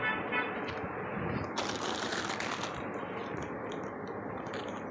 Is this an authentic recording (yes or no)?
yes